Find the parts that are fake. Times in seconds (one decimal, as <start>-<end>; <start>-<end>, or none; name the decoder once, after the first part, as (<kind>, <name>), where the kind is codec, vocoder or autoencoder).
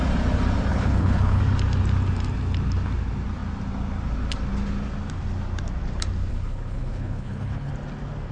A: 0.7-1.4 (codec, HILCodec); 6.3-7.7